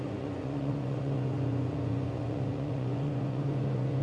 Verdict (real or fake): fake